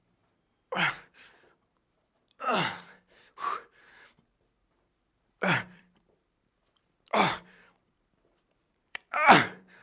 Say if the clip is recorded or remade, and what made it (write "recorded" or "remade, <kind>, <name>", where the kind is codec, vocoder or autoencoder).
remade, vocoder, BigVGAN v2